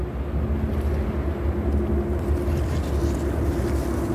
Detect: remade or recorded recorded